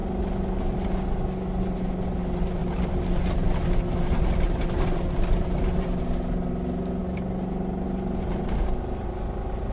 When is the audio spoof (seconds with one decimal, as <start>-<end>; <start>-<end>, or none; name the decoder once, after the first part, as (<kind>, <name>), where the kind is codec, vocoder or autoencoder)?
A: none